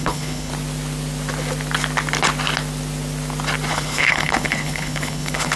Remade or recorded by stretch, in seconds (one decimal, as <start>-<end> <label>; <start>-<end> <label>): 0.0-0.5 remade; 0.5-3.7 recorded; 3.7-5.6 remade